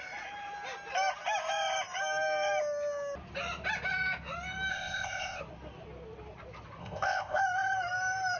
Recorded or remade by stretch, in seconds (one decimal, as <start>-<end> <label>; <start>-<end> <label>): 0.0-4.7 recorded; 4.7-5.4 remade; 5.4-6.8 recorded; 6.8-7.4 remade; 7.4-8.4 recorded